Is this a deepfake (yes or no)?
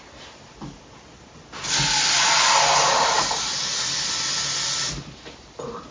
no